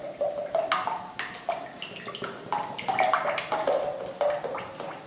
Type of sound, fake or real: real